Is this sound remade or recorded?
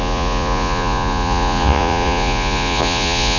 remade